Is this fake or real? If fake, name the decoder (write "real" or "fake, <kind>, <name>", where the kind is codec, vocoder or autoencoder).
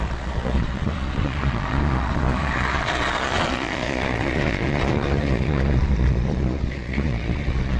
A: fake, vocoder, Vocos